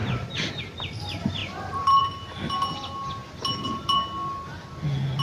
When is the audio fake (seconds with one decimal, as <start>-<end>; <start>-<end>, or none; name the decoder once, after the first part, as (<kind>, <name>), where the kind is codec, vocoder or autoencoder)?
0.0-0.6 (vocoder, BigVGAN v2); 1.4-2.0; 3.2-4.0